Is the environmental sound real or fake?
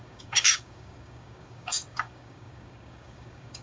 fake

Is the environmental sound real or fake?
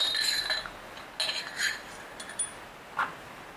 real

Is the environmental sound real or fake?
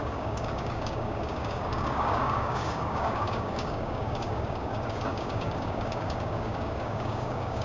fake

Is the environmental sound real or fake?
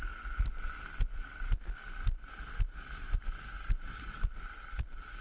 fake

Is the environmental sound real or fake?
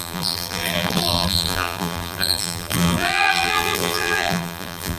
fake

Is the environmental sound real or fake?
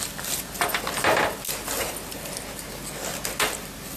real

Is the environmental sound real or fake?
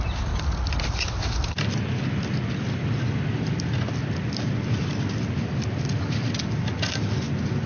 real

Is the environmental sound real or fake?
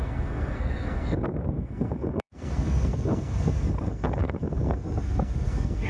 fake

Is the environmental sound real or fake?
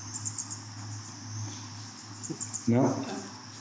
real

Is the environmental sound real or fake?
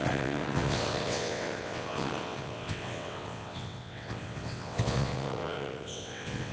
fake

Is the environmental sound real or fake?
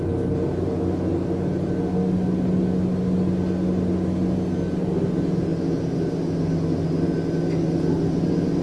real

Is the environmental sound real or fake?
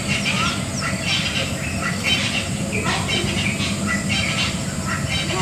real